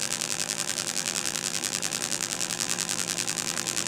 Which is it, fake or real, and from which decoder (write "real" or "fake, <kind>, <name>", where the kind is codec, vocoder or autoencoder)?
fake, vocoder, BigVGAN v2